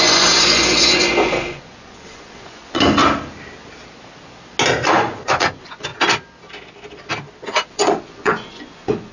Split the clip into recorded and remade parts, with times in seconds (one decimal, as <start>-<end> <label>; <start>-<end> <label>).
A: 0.0-3.0 remade; 3.0-4.9 recorded; 4.9-5.9 remade; 5.9-7.7 recorded; 7.7-9.1 remade